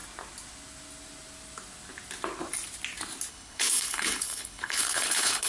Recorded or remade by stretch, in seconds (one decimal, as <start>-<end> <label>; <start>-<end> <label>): 0.0-3.3 recorded; 3.3-5.5 remade